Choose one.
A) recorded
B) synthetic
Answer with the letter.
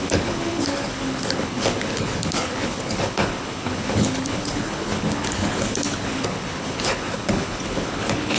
B